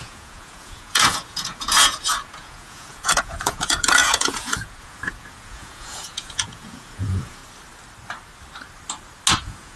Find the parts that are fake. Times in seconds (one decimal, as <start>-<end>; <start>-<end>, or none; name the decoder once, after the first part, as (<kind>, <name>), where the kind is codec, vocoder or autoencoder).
0.0-7.4 (vocoder, Vocos); 9.4-9.8